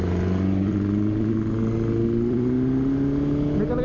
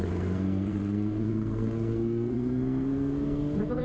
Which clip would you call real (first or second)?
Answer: first